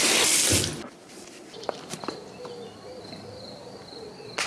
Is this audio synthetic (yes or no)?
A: no